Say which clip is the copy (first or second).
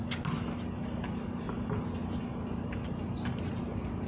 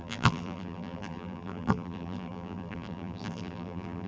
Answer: second